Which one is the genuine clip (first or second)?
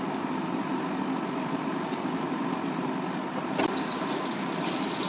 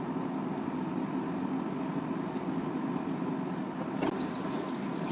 second